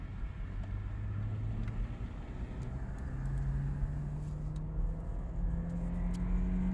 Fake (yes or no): no